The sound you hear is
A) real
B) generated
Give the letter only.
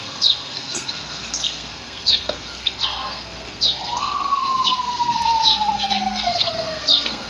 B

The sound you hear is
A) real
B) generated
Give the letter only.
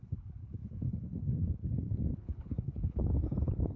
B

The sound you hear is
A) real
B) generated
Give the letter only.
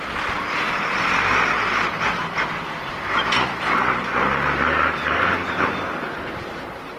B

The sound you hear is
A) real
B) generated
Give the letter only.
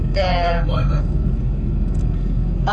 B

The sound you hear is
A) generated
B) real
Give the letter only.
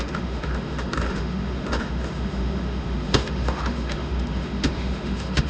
A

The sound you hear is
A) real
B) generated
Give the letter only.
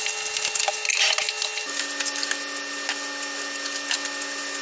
A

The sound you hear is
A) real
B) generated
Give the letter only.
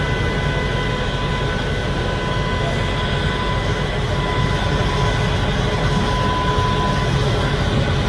A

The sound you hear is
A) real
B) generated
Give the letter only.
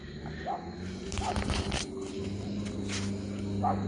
A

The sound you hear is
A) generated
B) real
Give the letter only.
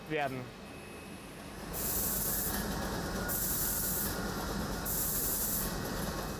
B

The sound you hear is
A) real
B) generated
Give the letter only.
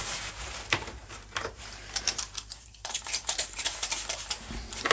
B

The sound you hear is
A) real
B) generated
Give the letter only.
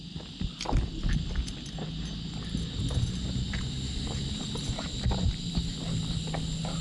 A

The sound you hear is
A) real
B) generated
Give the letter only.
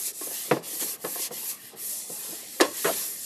A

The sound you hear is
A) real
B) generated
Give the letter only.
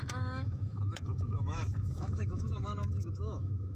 B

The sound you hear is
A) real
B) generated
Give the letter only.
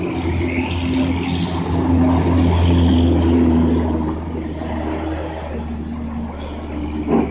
A